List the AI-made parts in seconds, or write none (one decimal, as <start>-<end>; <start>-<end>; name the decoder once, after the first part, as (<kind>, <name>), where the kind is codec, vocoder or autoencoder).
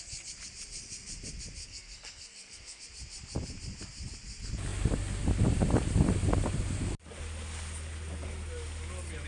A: 1.6-2.8 (codec, SNAC)